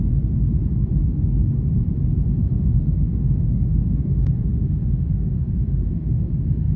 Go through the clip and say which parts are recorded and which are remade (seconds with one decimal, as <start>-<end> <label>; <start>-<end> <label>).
0.0-1.0 recorded; 1.0-1.5 remade; 1.5-2.4 recorded; 2.4-6.8 remade